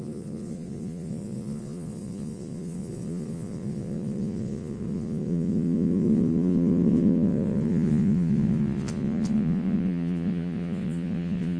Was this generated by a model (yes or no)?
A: yes